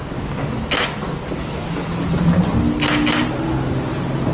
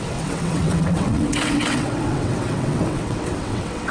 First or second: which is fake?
second